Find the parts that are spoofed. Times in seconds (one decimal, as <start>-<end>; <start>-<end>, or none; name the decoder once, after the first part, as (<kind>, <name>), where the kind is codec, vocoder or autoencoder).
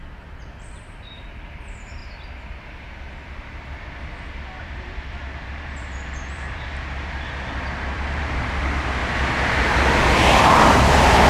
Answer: 0.0-2.0 (vocoder, BigVGAN v2); 4.6-6.7; 7.7-9.0; 10.1-11.3